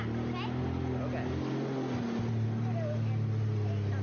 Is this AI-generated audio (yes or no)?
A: no